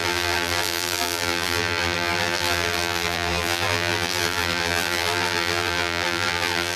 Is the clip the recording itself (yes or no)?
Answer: no